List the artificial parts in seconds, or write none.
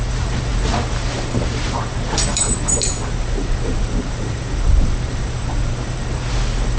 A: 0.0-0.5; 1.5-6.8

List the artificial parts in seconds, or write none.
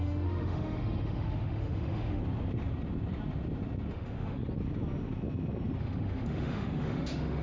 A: 0.0-2.2; 3.9-4.4; 5.8-7.4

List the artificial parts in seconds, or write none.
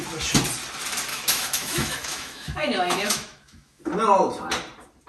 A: 1.1-3.8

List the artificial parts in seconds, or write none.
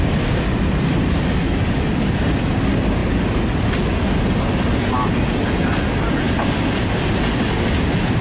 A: none